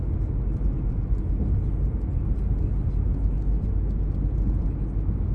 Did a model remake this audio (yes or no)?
no